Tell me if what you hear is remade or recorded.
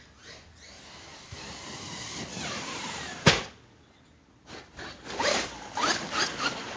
recorded